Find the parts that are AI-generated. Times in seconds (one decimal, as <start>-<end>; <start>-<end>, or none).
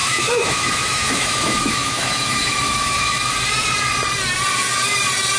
0.0-3.2